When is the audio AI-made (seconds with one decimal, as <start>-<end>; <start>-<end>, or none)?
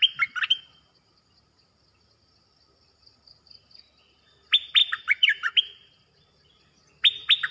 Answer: 4.8-6.6